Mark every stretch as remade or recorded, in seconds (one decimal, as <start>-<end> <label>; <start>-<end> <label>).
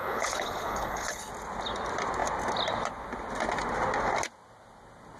0.0-1.3 remade; 1.3-5.2 recorded